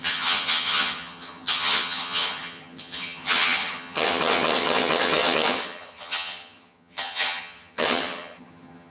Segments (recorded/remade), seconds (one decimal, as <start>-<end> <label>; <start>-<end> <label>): 0.0-8.9 remade